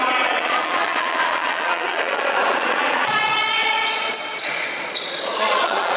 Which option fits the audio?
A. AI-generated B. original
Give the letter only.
A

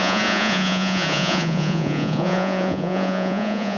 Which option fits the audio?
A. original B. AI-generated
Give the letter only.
B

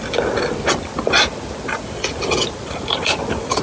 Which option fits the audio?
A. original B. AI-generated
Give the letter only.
A